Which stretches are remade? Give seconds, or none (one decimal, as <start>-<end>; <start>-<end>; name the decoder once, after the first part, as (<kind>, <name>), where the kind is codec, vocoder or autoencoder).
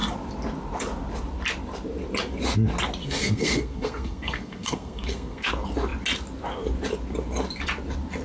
3.0-5.5 (codec, SNAC)